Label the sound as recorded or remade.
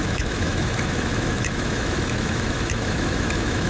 remade